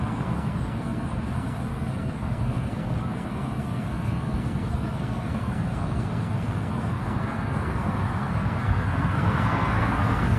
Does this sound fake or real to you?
fake